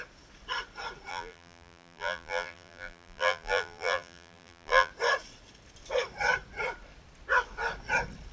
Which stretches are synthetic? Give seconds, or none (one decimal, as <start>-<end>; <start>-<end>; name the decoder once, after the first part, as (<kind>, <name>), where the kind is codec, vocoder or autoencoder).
1.1-4.9 (vocoder, BigVGAN v2)

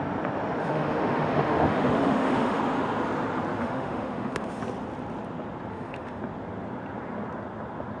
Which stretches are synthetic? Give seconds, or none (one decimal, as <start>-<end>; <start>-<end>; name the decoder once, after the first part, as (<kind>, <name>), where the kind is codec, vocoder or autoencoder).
0.6-2.6 (autoencoder, DAC-VAE); 3.6-4.6; 5.7-6.2

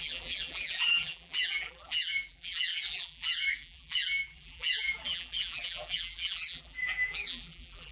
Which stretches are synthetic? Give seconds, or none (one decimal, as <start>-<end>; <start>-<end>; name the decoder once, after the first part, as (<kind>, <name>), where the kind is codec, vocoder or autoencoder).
0.0-7.9 (vocoder, BigVGAN v2)

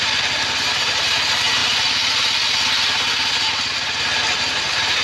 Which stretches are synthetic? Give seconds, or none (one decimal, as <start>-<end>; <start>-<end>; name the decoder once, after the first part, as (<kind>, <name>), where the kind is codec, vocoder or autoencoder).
none

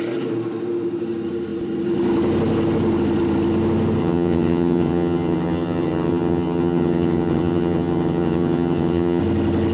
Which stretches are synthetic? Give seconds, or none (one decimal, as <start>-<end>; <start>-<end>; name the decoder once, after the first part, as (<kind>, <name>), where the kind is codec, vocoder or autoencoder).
4.0-9.2 (vocoder, HiFi-GAN)

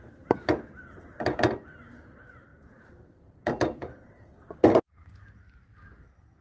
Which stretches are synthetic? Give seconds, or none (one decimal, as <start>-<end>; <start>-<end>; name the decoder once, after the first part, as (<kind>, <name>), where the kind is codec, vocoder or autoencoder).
2.5-4.5 (vocoder, BigVGAN v2)

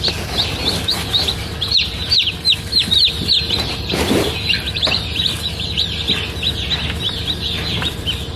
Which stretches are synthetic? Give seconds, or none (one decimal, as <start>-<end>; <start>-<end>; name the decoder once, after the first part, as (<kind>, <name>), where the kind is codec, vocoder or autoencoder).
0.9-5.1 (vocoder, BigVGAN v2)

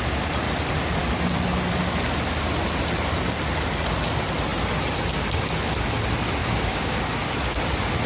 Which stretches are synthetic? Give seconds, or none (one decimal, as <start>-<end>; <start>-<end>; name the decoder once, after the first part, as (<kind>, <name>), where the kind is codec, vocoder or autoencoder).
6.4-7.0 (codec, DAC)